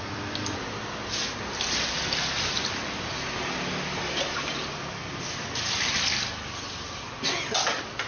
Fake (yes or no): no